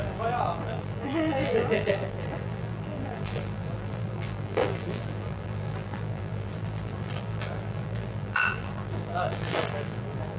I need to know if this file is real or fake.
fake